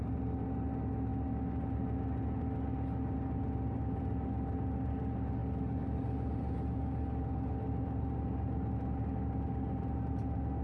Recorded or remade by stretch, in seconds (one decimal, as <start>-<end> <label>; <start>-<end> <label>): 0.0-10.6 recorded

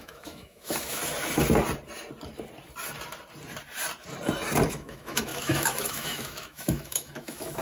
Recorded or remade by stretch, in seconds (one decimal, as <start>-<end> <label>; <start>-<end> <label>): 0.0-1.0 remade; 1.0-4.7 recorded; 4.7-7.6 remade